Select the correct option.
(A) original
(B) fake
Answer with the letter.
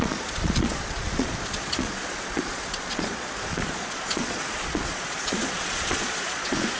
B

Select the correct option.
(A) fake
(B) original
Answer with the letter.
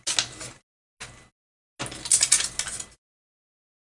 B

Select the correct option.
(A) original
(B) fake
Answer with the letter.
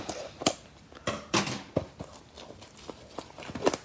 A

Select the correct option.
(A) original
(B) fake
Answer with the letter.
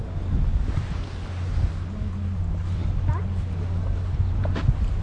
A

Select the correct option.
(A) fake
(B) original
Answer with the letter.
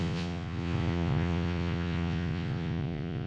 A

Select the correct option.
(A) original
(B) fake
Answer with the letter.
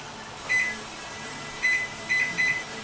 A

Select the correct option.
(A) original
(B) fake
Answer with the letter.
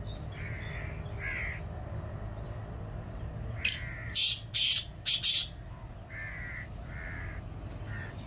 A